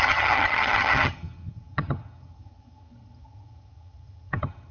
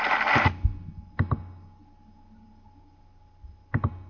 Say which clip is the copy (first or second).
first